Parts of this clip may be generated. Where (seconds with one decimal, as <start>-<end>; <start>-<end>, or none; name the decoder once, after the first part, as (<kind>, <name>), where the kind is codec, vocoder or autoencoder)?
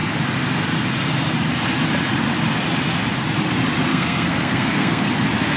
3.9-5.1 (codec, SNAC)